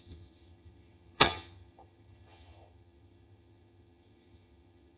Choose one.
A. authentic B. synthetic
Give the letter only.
B